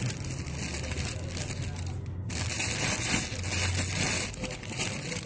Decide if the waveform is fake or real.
real